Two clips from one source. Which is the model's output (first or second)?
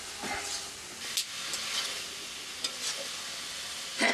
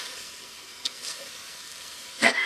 second